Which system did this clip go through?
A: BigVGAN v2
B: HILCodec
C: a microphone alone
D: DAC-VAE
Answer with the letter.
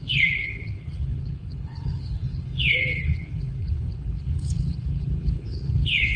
B